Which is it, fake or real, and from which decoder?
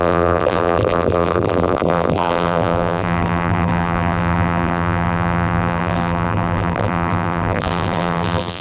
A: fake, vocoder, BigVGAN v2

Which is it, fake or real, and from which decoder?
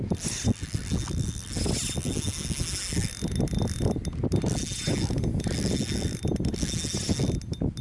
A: real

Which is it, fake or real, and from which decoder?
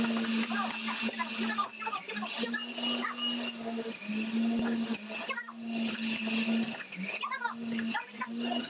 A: real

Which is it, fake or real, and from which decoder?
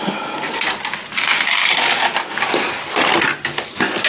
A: real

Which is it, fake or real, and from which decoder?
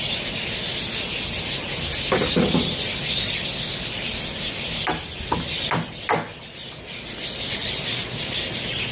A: real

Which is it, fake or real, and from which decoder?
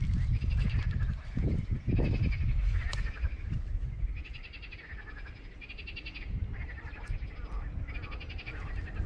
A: real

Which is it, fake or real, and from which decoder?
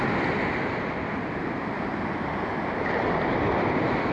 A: real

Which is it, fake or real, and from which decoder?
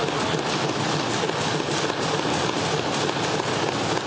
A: real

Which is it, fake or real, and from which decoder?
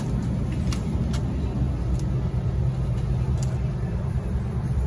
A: real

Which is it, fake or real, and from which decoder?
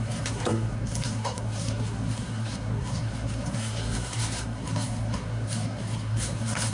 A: fake, codec, SNAC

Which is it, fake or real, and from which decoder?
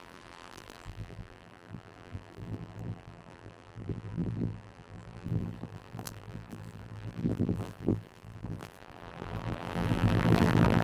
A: fake, vocoder, BigVGAN v2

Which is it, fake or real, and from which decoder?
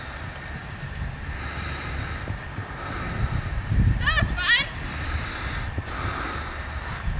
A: real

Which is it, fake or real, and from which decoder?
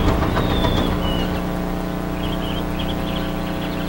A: real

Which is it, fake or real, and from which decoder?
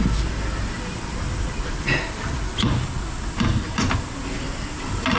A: real